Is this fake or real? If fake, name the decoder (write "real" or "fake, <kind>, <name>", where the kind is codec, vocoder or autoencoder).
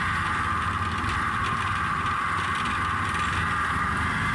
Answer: real